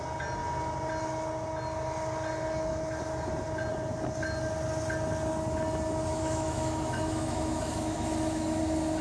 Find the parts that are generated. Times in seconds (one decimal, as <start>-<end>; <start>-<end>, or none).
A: 6.1-8.6